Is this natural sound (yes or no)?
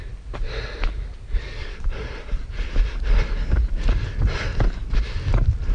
yes